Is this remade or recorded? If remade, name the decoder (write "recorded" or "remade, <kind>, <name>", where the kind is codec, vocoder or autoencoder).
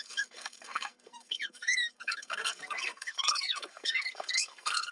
remade, codec, SNAC